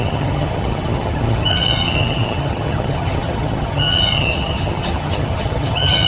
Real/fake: fake